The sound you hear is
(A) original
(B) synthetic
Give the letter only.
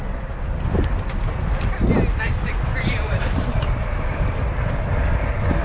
A